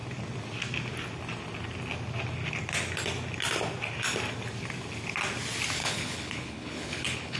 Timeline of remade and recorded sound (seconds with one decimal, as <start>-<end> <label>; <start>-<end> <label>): 0.0-5.8 recorded; 5.8-7.4 remade